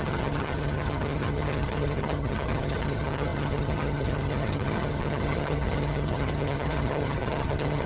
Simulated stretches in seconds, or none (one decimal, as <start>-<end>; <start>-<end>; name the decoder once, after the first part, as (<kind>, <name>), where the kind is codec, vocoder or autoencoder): 0.0-7.9 (vocoder, HiFi-GAN)